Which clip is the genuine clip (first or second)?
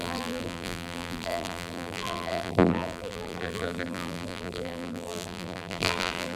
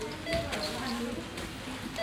second